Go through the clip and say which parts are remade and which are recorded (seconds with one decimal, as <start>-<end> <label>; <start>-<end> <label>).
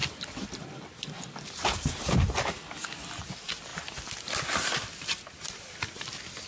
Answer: 0.0-3.2 recorded; 3.2-3.7 remade; 3.7-4.4 recorded; 4.4-6.5 remade